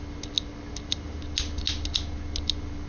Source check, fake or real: real